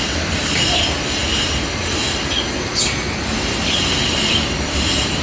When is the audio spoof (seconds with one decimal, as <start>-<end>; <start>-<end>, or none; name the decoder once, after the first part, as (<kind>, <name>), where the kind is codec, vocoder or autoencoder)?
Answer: 0.0-1.2 (vocoder, BigVGAN v2); 4.3-5.2